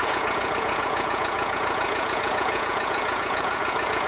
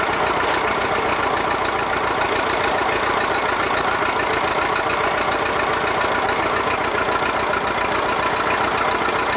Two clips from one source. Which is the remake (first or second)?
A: first